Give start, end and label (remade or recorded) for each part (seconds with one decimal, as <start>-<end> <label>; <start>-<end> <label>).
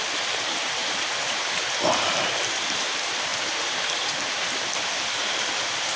0.0-0.8 recorded; 0.8-1.4 remade; 1.4-3.3 recorded; 3.3-4.5 remade; 4.5-6.0 recorded